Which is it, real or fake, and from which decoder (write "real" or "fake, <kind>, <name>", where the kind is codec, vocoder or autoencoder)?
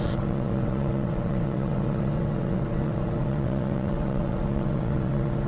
fake, vocoder, WaveNeXt